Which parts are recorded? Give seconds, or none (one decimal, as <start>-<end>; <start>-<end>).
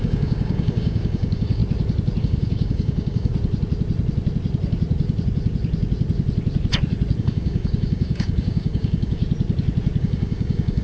1.6-2.2; 3.3-7.2; 9.2-10.0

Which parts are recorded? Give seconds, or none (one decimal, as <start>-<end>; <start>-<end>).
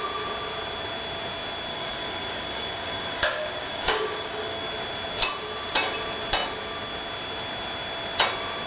0.0-1.7; 4.7-8.7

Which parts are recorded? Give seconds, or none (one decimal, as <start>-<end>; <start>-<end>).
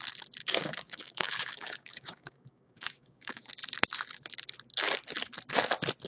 0.0-0.4; 3.5-6.1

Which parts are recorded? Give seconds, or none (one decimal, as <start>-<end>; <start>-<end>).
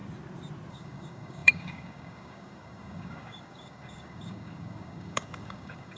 0.0-0.7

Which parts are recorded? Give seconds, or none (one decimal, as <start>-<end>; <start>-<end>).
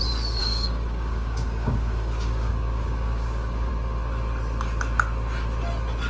0.0-0.4; 3.7-6.1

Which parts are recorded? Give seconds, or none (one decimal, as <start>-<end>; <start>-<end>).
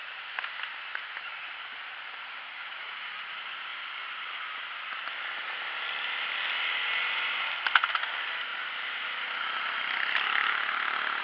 0.0-11.2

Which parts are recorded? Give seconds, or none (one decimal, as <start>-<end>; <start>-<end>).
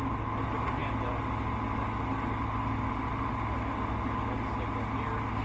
0.0-5.4